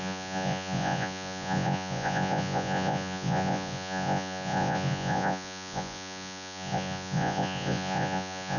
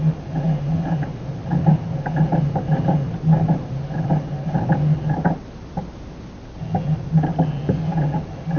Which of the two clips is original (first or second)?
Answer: second